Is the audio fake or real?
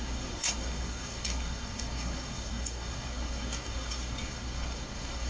fake